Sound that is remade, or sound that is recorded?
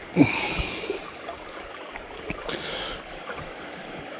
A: remade